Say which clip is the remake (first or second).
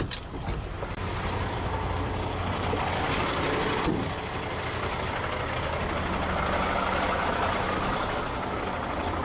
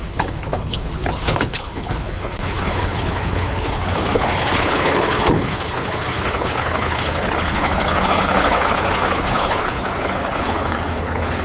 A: second